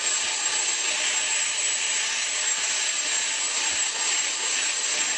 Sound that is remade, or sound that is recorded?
recorded